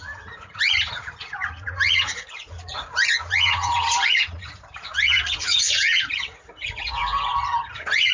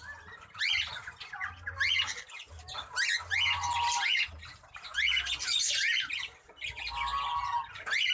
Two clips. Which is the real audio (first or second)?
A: second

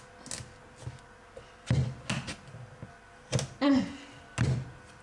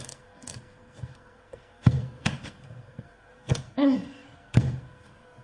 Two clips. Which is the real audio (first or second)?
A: first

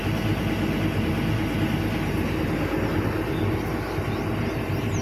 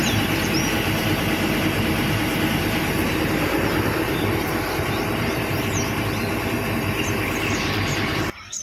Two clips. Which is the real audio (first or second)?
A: first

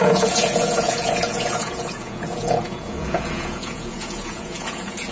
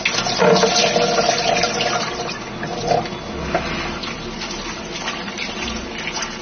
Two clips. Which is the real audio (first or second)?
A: second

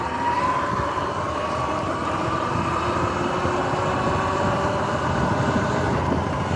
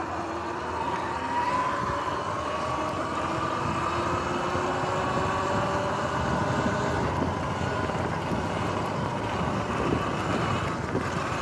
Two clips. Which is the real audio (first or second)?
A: second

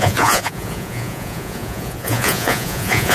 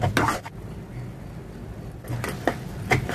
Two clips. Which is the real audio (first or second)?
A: second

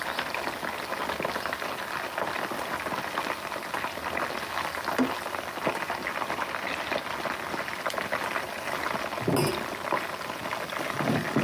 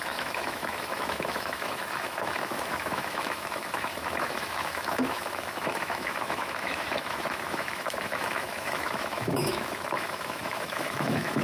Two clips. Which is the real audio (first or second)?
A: first